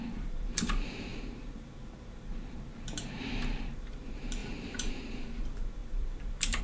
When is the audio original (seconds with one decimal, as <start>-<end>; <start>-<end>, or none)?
none